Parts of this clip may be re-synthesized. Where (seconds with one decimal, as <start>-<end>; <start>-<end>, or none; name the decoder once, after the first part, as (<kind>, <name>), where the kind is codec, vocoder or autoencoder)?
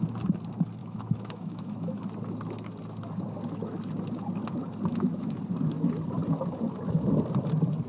0.8-2.0 (autoencoder, DAC-VAE); 4.9-5.4